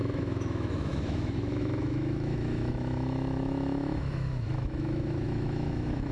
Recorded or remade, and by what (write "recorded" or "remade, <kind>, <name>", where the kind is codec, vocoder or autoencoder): remade, autoencoder, DAC-VAE